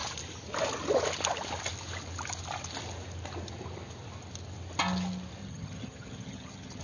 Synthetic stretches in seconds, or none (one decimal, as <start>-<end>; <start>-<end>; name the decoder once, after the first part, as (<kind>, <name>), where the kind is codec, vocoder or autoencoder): 5.4-6.8 (vocoder, HiFi-GAN)